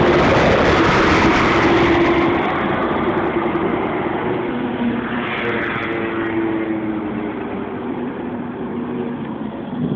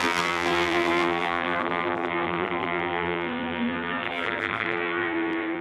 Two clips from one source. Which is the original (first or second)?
first